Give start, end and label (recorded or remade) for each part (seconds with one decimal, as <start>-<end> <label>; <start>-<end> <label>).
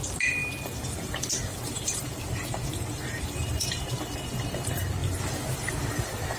0.0-1.5 recorded; 1.5-4.0 remade; 4.0-5.0 recorded; 5.0-5.7 remade; 5.7-6.4 recorded